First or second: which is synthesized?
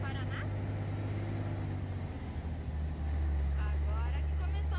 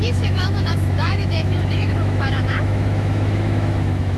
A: second